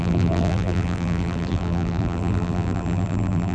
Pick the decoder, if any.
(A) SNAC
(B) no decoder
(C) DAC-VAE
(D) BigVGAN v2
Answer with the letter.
D